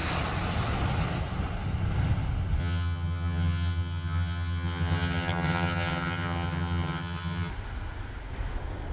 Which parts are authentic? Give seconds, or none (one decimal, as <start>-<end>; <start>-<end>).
0.0-2.6; 7.5-8.9